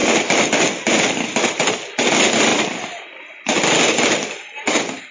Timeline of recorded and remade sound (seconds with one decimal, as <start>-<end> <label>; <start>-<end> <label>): 0.0-5.1 recorded